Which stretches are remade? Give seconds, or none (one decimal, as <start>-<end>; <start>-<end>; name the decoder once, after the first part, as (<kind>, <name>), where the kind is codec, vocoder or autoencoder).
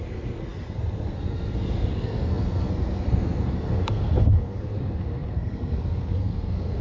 0.0-6.8 (codec, SNAC)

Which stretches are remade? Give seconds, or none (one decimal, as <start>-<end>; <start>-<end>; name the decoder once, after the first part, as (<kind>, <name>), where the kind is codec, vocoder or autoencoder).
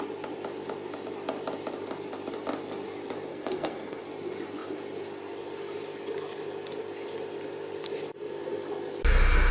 3.3-4.0 (codec, SNAC)